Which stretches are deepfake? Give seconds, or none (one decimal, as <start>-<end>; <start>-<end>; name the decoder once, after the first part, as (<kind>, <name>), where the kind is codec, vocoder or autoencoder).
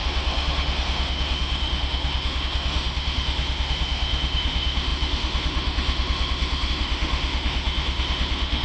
0.0-8.6 (autoencoder, DAC-VAE)